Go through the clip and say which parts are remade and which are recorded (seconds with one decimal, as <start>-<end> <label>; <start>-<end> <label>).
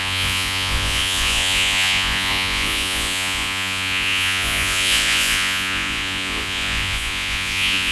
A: 0.0-7.9 remade